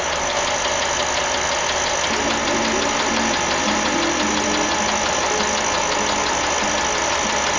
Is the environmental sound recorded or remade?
recorded